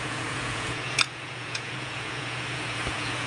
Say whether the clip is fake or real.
fake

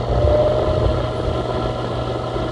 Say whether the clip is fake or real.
real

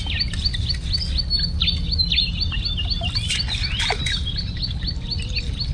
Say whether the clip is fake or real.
real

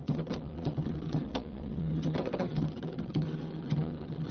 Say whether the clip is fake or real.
fake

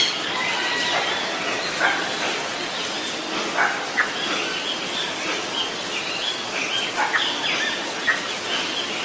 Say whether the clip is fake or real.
real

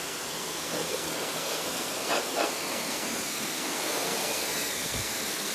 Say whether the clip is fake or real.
fake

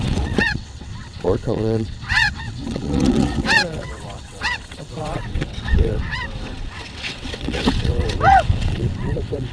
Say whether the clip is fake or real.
fake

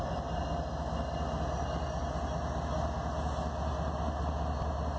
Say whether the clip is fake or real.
real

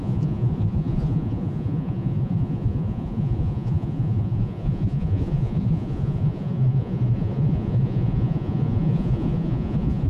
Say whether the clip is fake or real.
fake